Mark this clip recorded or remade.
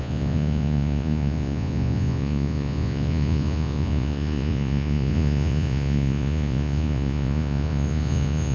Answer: remade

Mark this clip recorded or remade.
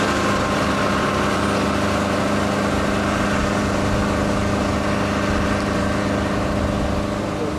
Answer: recorded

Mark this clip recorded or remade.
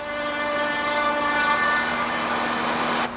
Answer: recorded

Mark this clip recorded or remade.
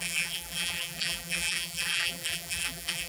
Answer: remade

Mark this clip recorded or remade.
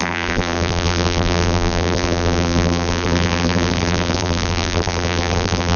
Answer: remade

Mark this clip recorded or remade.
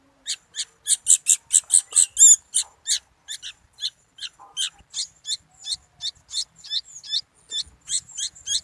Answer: recorded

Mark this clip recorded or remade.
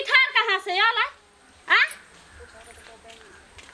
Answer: recorded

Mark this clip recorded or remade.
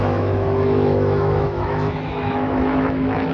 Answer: remade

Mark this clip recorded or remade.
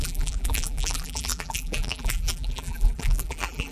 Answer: remade